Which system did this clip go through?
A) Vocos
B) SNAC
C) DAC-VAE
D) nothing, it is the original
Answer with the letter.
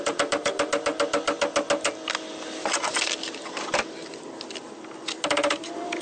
D